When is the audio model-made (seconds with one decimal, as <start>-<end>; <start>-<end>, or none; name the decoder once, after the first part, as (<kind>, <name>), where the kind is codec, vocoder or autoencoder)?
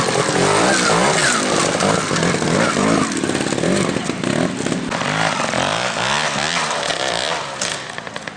none